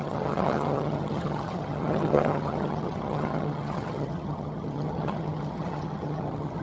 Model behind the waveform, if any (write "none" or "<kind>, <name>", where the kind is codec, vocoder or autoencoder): vocoder, HiFi-GAN